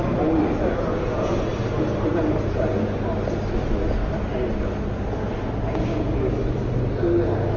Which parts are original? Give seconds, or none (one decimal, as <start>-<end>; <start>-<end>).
0.0-5.9; 6.8-7.6